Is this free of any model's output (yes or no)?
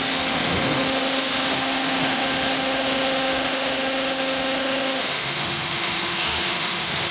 no